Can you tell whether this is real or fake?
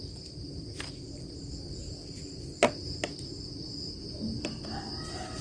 real